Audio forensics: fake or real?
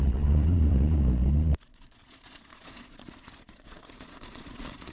fake